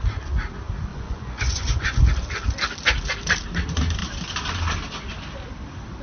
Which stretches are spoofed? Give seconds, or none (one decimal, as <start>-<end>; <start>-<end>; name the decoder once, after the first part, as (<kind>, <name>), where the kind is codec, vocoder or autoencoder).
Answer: 0.9-2.0 (vocoder, Vocos)